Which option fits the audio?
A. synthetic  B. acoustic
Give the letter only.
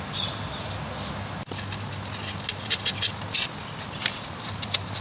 B